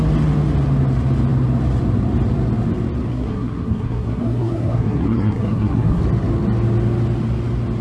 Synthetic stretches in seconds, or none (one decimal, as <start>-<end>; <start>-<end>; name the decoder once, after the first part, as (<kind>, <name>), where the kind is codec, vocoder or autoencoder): 3.1-6.0 (codec, SNAC)